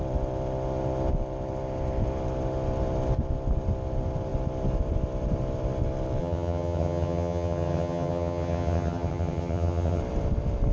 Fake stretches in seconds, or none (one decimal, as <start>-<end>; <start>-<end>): 6.2-10.0